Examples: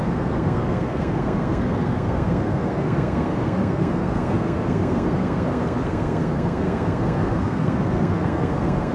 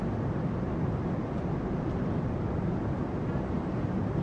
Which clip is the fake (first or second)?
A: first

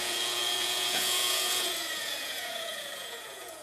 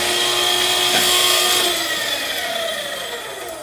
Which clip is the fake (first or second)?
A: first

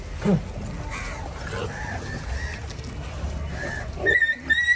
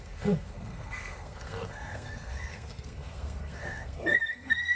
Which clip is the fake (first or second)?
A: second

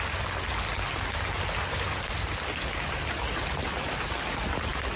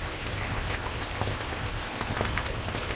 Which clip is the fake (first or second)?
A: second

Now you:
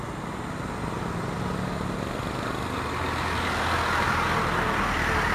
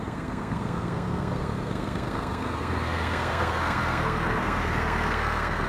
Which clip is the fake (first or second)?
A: second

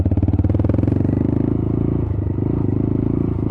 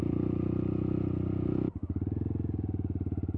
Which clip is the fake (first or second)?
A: first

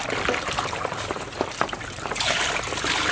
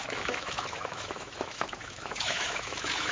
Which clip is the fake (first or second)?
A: second